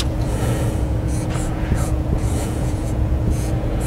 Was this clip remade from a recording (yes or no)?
yes